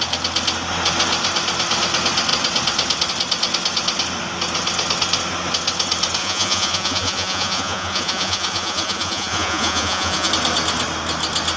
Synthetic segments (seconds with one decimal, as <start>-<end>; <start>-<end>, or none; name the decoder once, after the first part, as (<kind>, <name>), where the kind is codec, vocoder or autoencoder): 6.2-10.3 (vocoder, Vocos)